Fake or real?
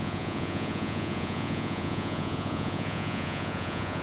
fake